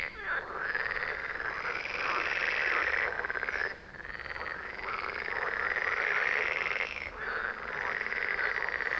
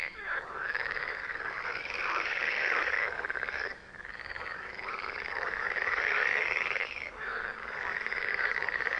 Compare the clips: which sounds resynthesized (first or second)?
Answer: second